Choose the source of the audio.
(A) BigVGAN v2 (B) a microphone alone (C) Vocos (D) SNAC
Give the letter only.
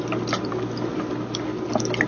B